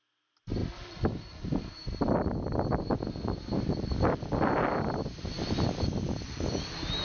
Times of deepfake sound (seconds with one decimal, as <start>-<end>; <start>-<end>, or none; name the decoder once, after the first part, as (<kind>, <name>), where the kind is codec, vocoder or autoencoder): none